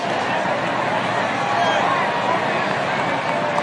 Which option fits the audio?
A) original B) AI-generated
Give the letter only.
A